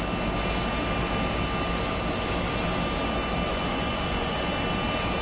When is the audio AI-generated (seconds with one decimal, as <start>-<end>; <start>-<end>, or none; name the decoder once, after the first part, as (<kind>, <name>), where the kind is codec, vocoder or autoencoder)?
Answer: 3.5-4.5 (vocoder, Vocos)

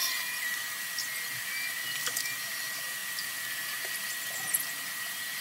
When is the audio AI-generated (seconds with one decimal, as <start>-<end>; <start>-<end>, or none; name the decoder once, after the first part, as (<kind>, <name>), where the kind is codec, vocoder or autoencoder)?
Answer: none